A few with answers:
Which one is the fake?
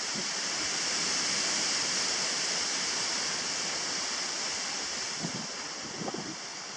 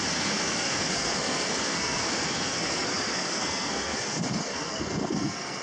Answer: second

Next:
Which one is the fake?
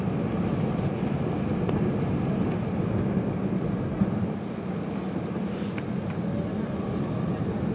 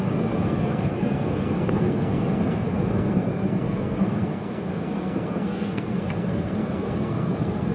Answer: second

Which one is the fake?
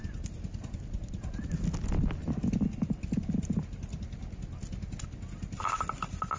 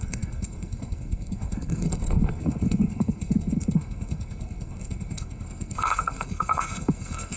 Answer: second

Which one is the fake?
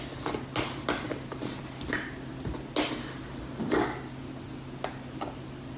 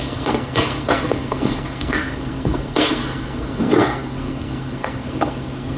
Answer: second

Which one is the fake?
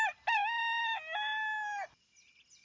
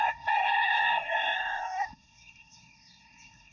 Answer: second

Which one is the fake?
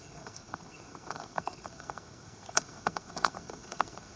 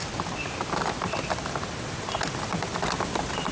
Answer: first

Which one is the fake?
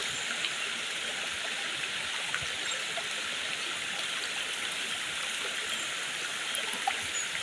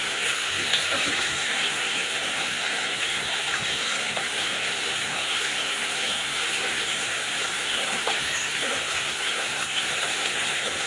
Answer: second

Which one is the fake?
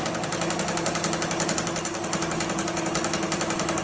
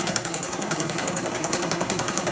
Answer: second